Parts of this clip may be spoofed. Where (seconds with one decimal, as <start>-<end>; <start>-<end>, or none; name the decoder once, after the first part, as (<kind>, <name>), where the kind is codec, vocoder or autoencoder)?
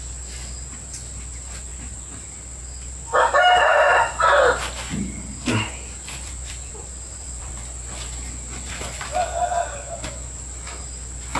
3.7-4.4 (vocoder, BigVGAN v2); 4.9-7.5